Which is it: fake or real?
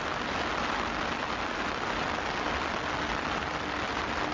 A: real